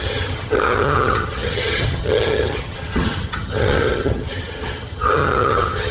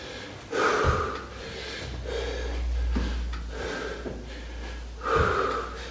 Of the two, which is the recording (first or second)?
second